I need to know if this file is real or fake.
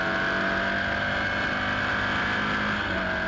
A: real